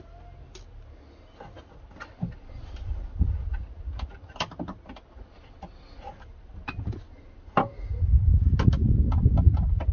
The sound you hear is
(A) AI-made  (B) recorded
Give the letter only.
B